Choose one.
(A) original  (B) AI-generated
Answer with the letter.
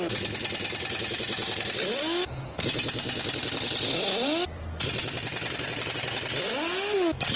A